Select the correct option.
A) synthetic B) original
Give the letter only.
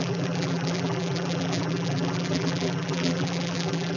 A